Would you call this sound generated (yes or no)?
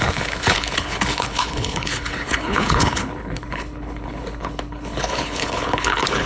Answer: yes